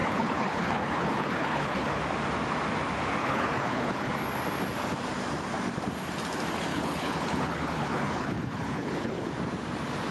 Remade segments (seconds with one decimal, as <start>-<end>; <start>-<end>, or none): 0.0-2.0; 3.2-4.1; 6.7-9.3